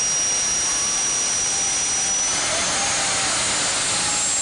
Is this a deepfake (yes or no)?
no